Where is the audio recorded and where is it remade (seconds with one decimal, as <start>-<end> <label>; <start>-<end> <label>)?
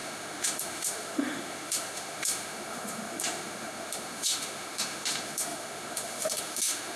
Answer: 0.0-7.0 remade